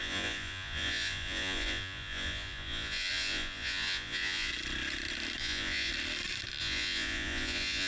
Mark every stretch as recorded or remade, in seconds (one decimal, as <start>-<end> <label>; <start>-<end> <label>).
0.0-4.5 remade; 4.5-5.4 recorded; 5.4-5.9 remade; 5.9-6.6 recorded; 6.6-7.9 remade